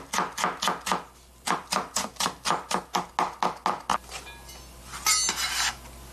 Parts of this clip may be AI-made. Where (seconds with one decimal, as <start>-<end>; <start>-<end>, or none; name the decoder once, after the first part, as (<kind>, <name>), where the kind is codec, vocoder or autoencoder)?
1.3-2.8 (vocoder, BigVGAN v2)